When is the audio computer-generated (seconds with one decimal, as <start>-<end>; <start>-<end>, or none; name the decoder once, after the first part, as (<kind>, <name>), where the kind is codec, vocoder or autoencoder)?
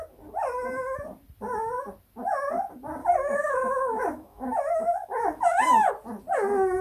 3.0-5.9 (autoencoder, DAC-VAE)